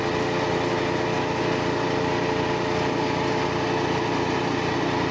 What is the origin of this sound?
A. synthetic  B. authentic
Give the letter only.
B